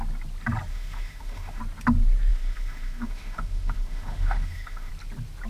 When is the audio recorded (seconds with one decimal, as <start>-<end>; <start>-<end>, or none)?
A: 0.0-0.7; 1.6-2.3; 4.9-5.5